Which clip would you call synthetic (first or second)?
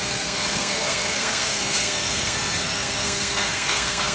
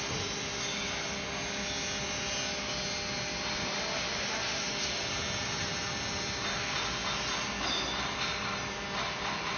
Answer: first